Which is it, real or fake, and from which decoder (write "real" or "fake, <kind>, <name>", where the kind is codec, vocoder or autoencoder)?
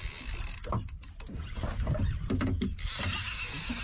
real